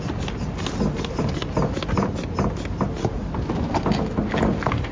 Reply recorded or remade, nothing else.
recorded